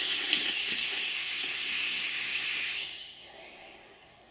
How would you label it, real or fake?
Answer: fake